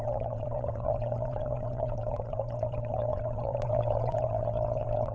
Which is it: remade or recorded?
remade